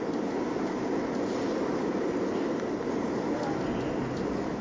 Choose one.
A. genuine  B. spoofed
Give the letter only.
A